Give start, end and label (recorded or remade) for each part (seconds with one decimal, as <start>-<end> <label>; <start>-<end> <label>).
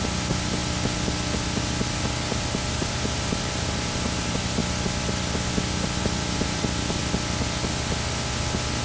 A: 0.0-0.6 remade; 0.6-2.3 recorded; 2.3-4.6 remade; 4.6-6.0 recorded; 6.0-7.0 remade; 7.0-8.8 recorded